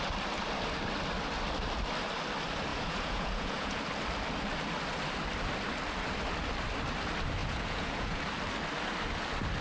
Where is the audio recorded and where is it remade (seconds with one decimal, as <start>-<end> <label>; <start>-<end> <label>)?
0.0-2.7 recorded; 2.7-3.8 remade; 3.8-7.4 recorded; 7.4-8.2 remade; 8.2-9.6 recorded